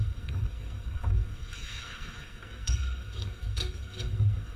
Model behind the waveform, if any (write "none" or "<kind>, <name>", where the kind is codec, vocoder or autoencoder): codec, SNAC